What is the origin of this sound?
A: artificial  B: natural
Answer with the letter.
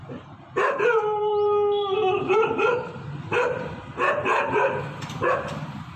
A